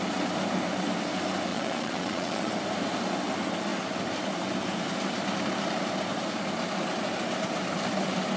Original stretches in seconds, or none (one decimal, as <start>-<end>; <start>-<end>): 0.0-1.5; 2.5-8.4